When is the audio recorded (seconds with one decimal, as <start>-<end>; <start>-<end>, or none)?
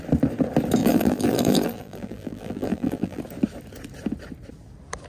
0.0-0.8; 3.2-5.1